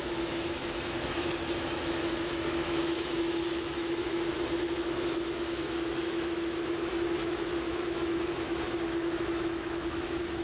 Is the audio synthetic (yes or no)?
yes